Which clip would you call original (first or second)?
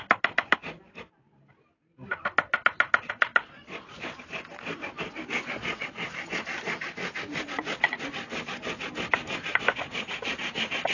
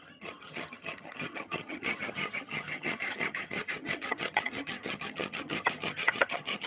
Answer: first